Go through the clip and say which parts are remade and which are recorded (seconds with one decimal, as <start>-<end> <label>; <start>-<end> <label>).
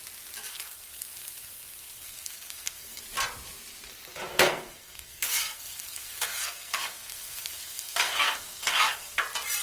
0.0-0.5 recorded; 0.5-3.0 remade; 3.0-4.3 recorded; 4.3-9.2 remade; 9.2-9.6 recorded